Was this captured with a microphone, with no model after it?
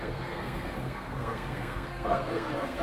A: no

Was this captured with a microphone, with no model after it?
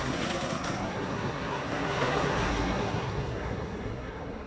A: no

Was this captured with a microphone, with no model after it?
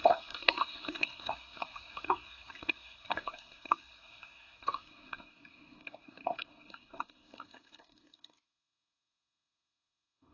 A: no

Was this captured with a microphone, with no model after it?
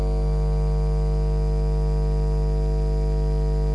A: yes